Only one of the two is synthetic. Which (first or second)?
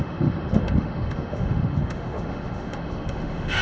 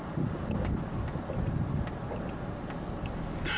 first